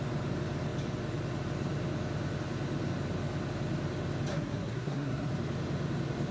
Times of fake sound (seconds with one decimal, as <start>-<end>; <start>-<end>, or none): 4.3-5.3